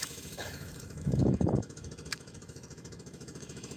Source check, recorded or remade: remade